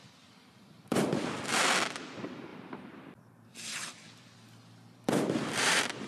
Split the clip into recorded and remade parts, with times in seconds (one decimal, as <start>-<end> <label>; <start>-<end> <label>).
0.0-1.6 remade; 1.6-2.5 recorded; 2.5-6.1 remade